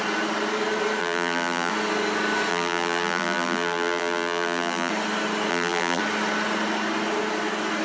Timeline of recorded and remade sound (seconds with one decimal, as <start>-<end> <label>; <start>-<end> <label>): 0.0-1.0 recorded; 1.0-1.7 remade; 1.7-2.5 recorded; 2.5-4.9 remade; 4.9-5.5 recorded; 5.5-6.0 remade; 6.0-7.8 recorded